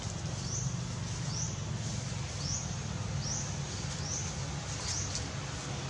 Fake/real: real